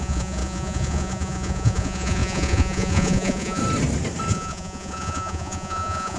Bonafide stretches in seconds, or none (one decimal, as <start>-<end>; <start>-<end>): 3.6-4.3

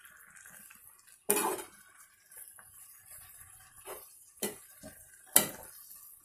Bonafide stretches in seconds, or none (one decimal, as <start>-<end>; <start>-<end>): 0.0-1.4; 5.1-6.2

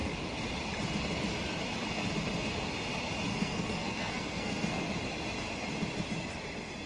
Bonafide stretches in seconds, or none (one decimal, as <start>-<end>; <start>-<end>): 0.0-3.3; 4.9-6.9

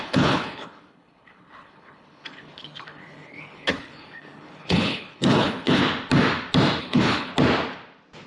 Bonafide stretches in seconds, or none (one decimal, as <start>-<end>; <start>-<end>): 5.8-6.8; 7.3-8.3